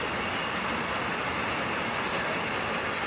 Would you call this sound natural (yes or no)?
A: yes